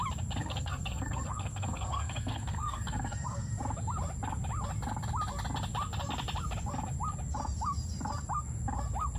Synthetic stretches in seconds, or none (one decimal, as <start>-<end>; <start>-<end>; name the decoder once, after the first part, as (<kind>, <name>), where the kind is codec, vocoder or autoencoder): 0.4-3.5 (codec, SNAC)